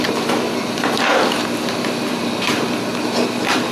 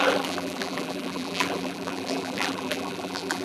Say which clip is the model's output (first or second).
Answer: second